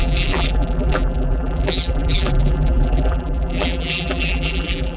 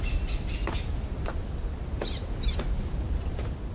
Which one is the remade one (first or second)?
first